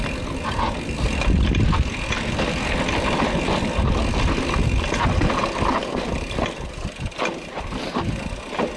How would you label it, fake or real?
real